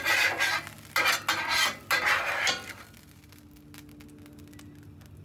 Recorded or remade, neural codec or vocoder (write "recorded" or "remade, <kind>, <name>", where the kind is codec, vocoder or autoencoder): recorded